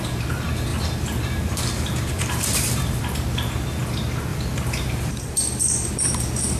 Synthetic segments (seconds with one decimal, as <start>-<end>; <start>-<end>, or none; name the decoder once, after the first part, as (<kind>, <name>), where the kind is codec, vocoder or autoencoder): 0.7-3.0 (vocoder, BigVGAN v2); 4.3-5.9